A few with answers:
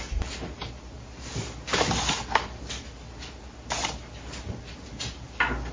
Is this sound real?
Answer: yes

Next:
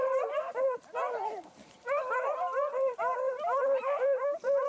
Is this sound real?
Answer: no